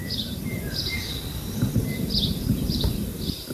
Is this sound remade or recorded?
remade